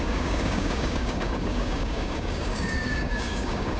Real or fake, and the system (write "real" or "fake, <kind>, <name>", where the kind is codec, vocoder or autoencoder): fake, codec, DAC